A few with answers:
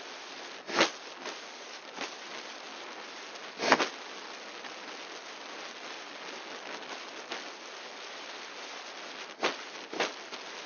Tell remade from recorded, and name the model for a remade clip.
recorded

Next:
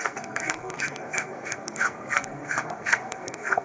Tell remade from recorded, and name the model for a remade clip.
remade, codec, SNAC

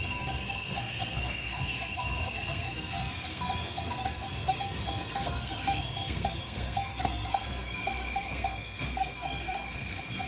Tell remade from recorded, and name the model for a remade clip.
remade, codec, SNAC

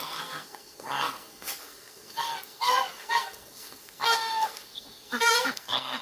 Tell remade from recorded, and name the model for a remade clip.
remade, codec, SNAC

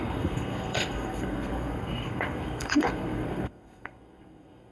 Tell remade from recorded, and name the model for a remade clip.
remade, codec, SNAC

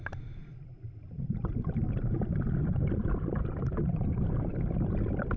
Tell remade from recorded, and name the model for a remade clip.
recorded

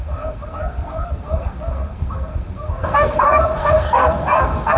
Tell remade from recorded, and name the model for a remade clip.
remade, codec, SNAC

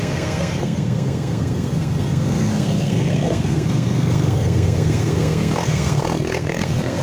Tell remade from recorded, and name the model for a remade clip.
remade, codec, SNAC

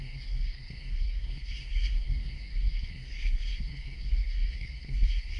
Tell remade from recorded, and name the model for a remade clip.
remade, codec, SNAC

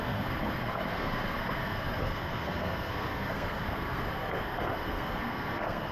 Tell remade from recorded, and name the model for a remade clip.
remade, codec, SNAC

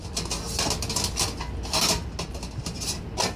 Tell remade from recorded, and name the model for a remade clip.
recorded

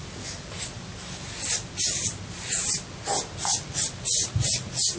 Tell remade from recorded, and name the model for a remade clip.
recorded